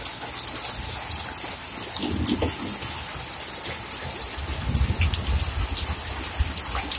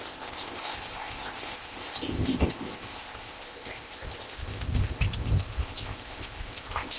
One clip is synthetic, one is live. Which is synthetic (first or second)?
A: second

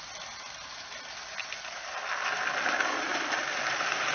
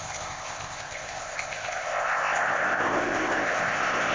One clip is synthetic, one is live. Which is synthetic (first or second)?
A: second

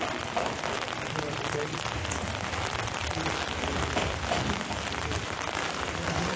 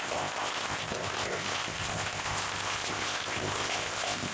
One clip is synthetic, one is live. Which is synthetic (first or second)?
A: second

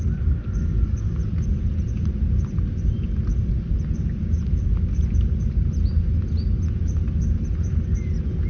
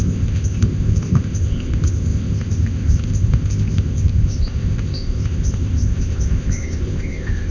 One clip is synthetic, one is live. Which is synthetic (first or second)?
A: second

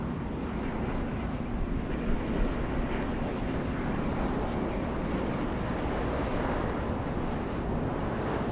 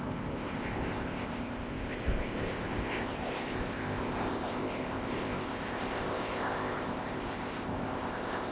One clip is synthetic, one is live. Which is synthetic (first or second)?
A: second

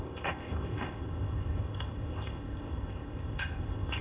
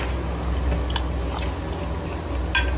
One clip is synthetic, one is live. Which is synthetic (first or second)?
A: first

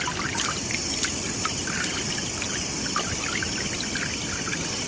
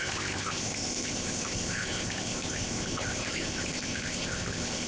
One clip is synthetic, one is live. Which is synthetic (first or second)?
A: second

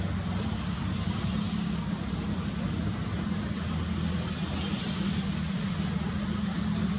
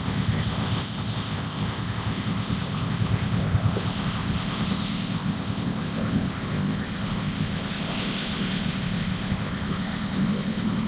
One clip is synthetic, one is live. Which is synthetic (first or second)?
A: second